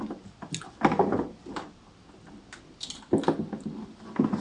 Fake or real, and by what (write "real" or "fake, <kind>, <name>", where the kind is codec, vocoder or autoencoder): real